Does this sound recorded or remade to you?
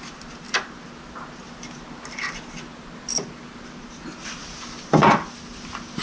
recorded